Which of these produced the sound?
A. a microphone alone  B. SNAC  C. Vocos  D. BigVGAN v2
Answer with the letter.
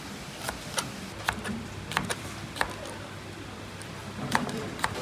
A